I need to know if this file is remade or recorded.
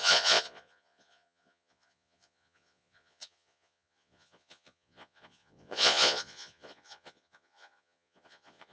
remade